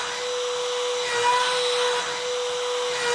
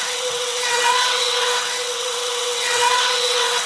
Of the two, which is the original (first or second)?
first